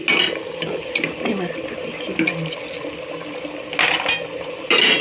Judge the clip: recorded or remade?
recorded